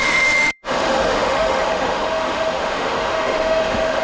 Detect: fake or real fake